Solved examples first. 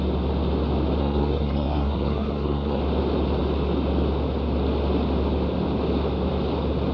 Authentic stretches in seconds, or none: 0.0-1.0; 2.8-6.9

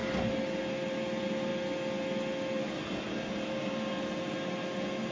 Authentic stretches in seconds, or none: 0.0-5.1

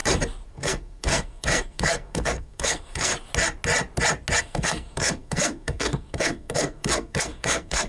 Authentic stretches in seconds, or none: 0.0-0.5; 3.1-4.4